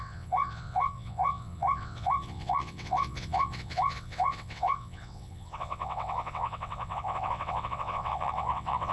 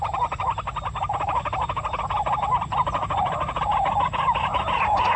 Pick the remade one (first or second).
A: first